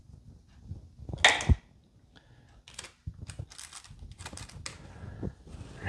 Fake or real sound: real